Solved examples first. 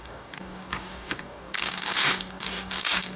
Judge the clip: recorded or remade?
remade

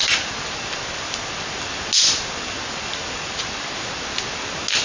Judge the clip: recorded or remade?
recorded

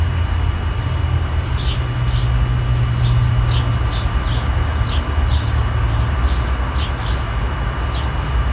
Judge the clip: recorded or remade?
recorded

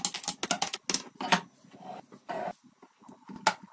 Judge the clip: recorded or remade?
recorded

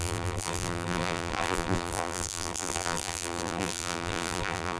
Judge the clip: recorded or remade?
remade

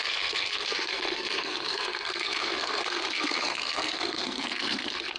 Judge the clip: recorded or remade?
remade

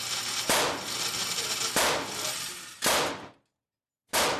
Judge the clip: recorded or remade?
recorded